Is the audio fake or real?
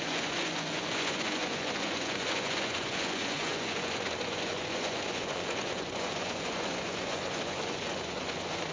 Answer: fake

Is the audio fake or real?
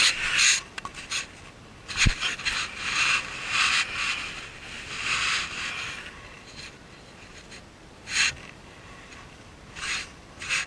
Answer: real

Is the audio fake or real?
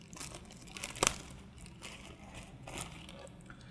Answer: real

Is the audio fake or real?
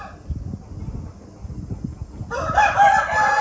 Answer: real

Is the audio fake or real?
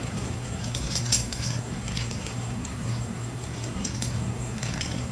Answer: fake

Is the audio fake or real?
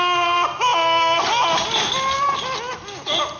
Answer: real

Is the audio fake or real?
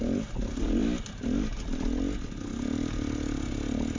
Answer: real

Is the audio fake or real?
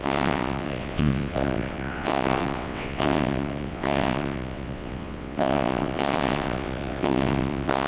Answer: fake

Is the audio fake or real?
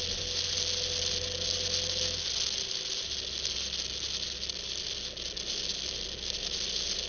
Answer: real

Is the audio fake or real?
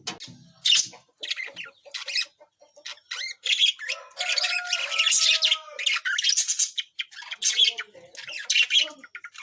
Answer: real